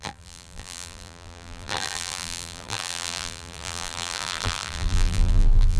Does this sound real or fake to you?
fake